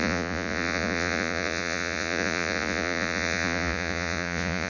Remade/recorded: remade